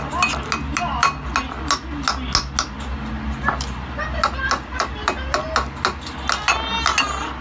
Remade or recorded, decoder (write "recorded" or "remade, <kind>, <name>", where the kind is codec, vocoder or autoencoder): recorded